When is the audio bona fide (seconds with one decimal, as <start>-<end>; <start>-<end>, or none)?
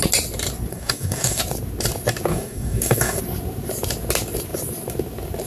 0.0-0.7; 1.4-2.3; 3.2-5.5